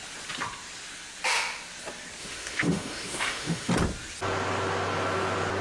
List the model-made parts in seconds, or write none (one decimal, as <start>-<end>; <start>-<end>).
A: 2.2-3.7